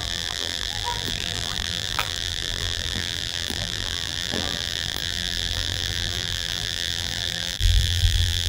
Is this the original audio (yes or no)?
no